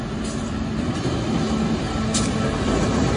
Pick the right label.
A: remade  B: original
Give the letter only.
B